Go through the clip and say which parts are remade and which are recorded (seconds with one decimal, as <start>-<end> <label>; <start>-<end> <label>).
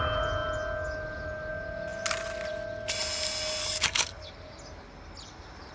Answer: 0.0-3.6 recorded; 3.6-4.3 remade; 4.3-5.7 recorded